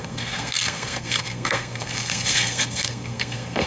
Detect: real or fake fake